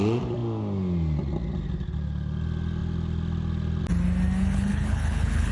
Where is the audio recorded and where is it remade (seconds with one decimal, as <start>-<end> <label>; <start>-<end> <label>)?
0.0-4.4 recorded; 4.4-5.5 remade